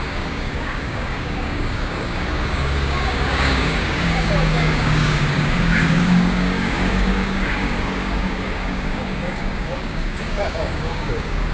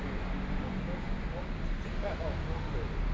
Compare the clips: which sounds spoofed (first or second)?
first